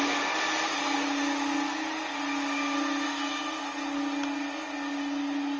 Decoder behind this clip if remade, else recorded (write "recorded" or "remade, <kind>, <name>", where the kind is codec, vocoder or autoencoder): recorded